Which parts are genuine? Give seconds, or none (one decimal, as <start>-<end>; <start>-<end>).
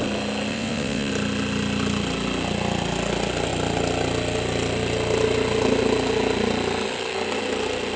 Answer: 0.0-0.5; 1.1-8.0